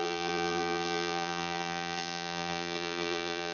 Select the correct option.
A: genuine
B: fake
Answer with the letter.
B